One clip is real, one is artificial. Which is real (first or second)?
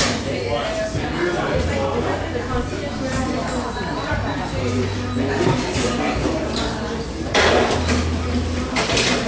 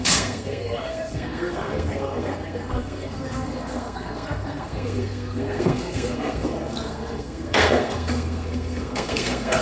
first